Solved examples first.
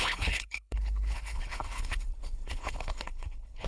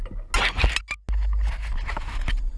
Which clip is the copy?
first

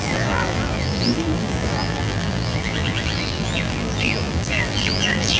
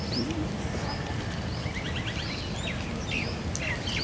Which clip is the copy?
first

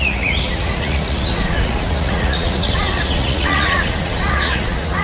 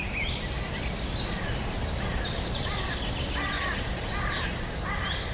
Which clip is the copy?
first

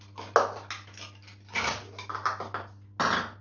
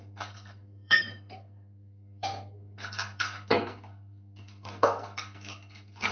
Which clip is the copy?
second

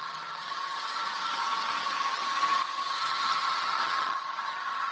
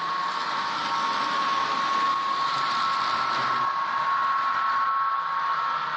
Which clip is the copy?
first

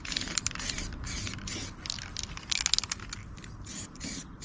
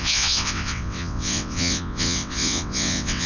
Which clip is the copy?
second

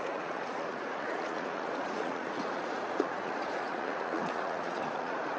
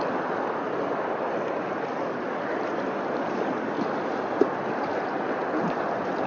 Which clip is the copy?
first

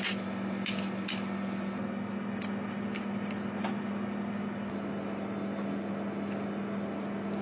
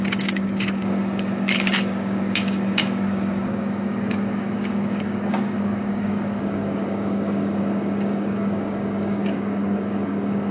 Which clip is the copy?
second